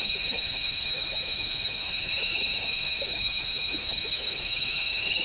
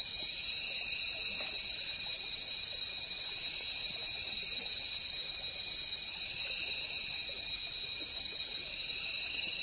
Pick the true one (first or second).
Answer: second